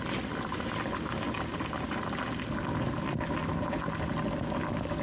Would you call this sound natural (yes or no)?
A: yes